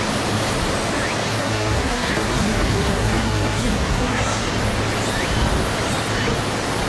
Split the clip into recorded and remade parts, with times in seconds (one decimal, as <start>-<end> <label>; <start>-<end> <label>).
0.0-1.4 recorded; 1.4-4.5 remade; 4.5-6.9 recorded